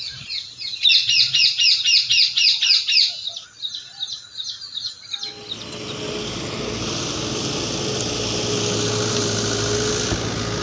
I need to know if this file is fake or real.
real